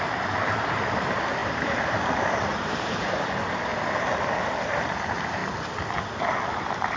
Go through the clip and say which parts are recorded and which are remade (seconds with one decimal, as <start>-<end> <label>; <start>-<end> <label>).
0.0-5.4 remade; 5.4-6.5 recorded; 6.5-7.0 remade